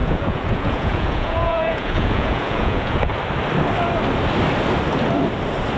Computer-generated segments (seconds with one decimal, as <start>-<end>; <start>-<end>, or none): 0.0-3.1